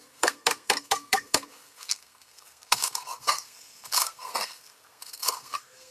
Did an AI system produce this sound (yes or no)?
yes